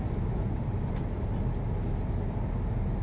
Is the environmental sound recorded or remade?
recorded